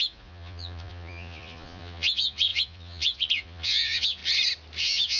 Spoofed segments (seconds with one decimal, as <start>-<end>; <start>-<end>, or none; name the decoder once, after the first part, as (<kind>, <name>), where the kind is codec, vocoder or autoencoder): 0.0-4.2 (vocoder, Vocos); 4.8-5.2